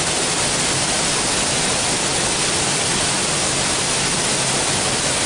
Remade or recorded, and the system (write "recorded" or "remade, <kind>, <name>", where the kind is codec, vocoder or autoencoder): recorded